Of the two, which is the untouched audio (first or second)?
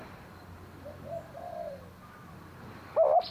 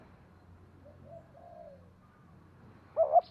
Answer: second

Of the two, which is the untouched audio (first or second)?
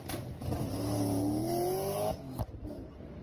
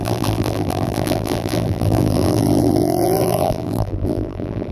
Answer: first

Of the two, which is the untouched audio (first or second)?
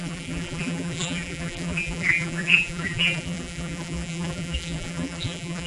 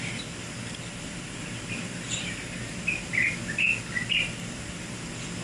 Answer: second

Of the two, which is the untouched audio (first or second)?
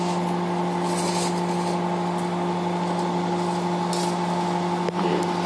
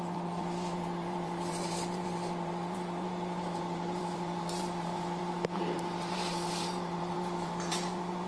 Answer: first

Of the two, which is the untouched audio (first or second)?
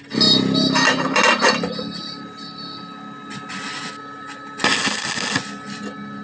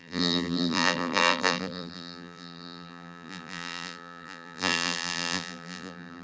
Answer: first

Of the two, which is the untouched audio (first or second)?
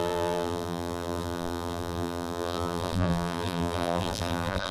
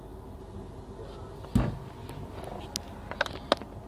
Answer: second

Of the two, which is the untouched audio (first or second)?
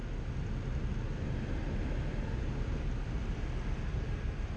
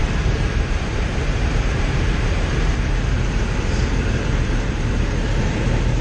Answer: first